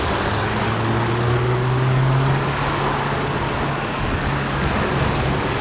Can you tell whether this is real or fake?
fake